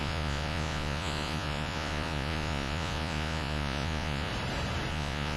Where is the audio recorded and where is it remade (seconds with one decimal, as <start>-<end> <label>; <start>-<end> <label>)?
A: 0.0-4.3 remade; 4.3-4.9 recorded; 4.9-5.4 remade